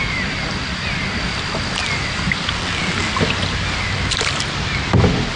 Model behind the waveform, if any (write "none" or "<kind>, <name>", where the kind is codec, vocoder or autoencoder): none